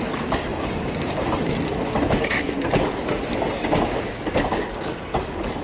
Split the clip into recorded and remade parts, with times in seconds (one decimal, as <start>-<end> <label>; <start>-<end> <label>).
0.0-0.5 recorded; 0.5-1.3 remade; 1.3-5.6 recorded